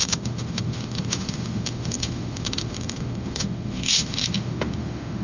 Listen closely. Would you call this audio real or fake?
fake